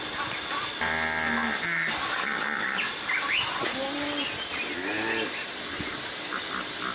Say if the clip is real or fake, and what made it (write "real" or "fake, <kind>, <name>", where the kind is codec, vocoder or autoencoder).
real